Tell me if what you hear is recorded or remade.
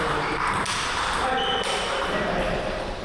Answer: remade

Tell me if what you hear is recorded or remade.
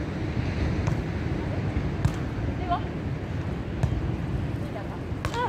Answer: recorded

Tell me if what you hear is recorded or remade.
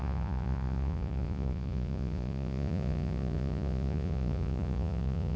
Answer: remade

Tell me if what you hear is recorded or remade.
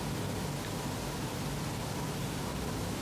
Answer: recorded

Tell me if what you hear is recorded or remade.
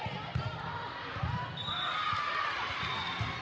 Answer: recorded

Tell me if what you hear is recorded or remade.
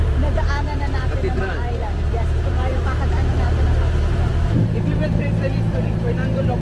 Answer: remade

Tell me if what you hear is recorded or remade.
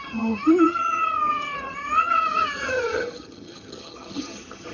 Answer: remade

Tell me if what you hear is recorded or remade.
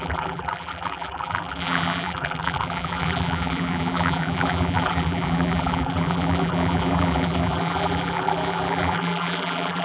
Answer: remade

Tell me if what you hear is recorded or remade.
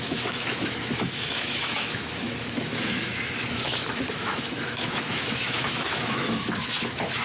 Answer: remade